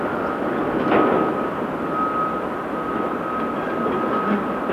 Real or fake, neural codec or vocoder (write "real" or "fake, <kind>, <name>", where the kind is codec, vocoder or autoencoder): real